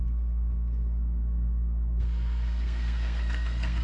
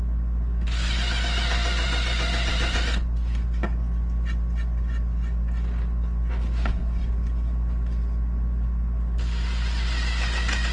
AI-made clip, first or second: first